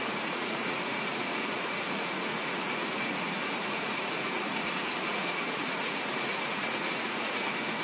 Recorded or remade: remade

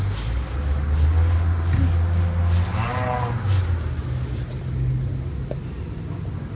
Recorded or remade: recorded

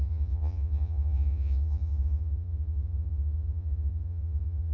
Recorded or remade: remade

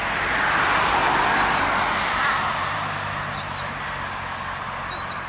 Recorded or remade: recorded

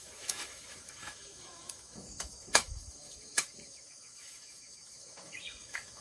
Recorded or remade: remade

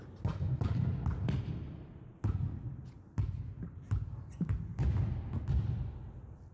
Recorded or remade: recorded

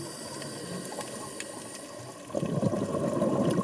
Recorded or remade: recorded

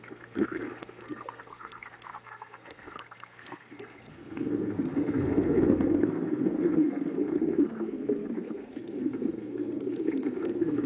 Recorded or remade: remade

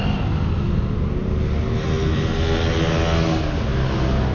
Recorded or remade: recorded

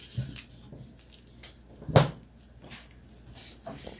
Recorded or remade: recorded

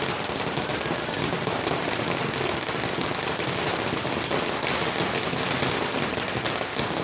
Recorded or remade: recorded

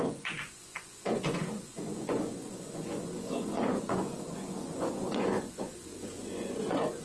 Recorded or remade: remade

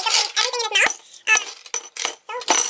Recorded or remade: recorded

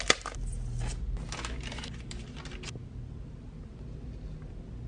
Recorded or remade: recorded